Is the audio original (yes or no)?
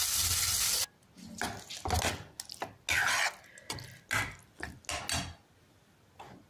yes